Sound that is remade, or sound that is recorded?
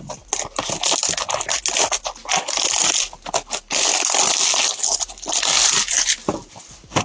recorded